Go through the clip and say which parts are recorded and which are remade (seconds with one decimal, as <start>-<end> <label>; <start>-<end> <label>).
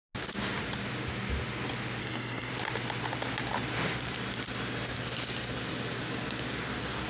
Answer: 0.0-2.0 recorded; 2.0-2.5 remade; 2.5-7.1 recorded